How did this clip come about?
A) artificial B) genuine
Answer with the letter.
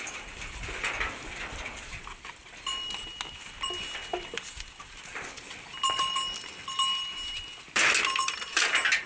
B